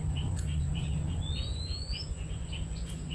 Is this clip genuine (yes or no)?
no